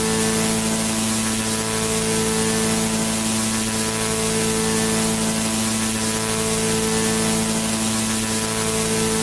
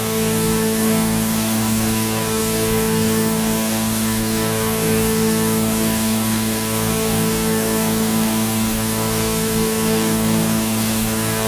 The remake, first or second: second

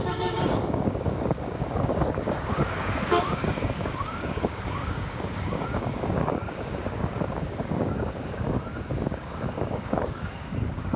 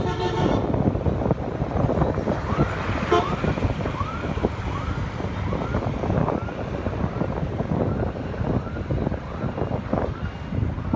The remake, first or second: first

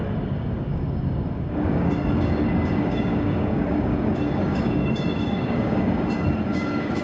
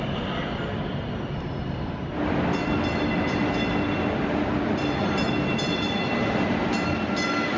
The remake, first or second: first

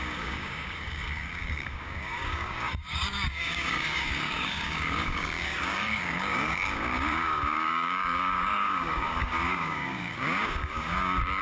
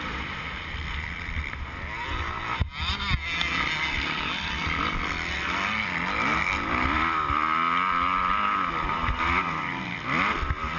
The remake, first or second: first